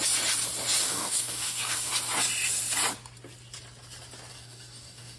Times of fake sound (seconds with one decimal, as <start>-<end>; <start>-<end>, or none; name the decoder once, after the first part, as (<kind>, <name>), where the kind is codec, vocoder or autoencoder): 0.8-1.9 (codec, DAC); 4.3-5.2